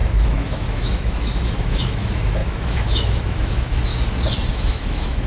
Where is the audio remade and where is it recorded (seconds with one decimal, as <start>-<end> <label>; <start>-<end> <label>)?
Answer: 0.0-3.9 remade; 3.9-4.5 recorded; 4.5-5.3 remade